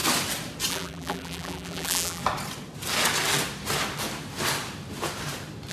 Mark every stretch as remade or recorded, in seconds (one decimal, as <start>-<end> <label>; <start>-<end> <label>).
0.0-0.7 recorded; 0.7-2.2 remade; 2.2-5.7 recorded